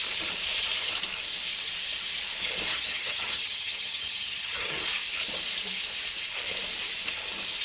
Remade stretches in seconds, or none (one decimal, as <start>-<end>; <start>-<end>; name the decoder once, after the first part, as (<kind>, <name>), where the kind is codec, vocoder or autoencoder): 2.7-4.8 (vocoder, HiFi-GAN)